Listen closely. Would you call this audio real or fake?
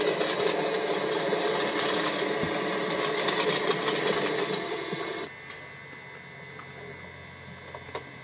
real